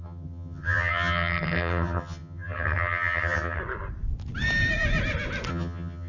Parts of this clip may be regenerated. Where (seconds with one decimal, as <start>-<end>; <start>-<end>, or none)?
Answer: 0.0-3.6; 5.5-6.1